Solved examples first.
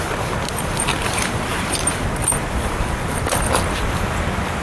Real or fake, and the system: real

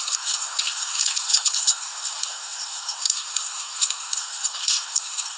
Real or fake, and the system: fake, codec, SNAC